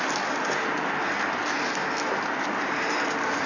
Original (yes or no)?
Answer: yes